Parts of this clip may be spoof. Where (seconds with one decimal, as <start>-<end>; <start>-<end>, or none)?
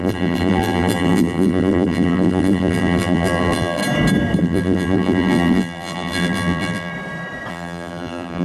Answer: 0.0-3.8; 4.4-6.9; 7.5-8.4